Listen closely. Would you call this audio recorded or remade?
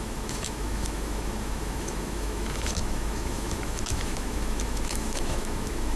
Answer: remade